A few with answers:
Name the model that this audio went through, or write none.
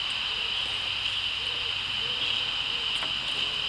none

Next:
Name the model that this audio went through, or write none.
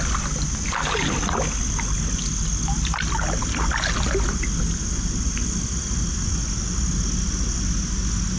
none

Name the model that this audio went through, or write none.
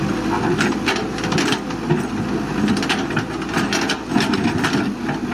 none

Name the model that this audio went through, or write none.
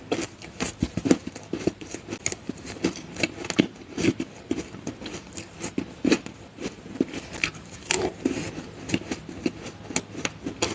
none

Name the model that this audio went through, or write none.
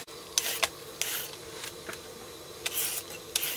none